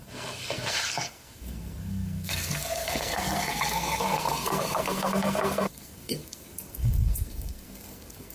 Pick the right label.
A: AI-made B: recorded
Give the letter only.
A